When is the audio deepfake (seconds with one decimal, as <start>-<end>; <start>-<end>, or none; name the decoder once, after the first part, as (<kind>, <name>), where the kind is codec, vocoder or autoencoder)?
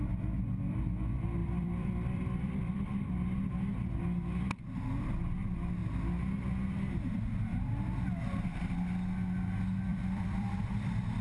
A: 1.4-3.5 (vocoder, BigVGAN v2); 9.9-11.2